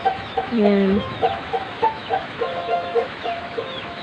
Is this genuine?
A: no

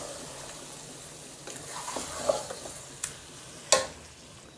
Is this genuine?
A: yes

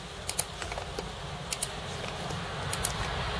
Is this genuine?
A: yes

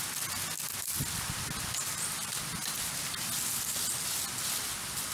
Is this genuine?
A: yes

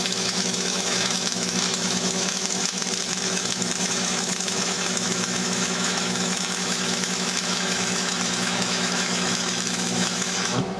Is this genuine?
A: no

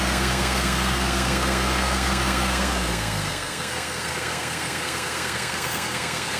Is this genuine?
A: no